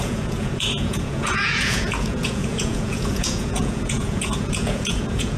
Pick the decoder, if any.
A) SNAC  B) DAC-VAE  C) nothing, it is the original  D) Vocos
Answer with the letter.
D